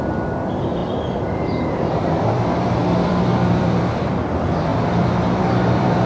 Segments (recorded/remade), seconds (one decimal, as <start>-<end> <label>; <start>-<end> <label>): 0.0-0.8 remade; 0.8-2.2 recorded; 2.2-6.1 remade